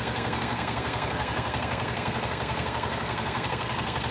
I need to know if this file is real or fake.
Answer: fake